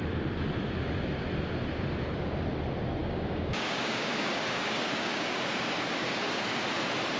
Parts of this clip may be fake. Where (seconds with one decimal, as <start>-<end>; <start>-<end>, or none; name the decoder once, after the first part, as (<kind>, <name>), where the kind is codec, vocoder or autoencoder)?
3.0-6.6 (codec, DAC)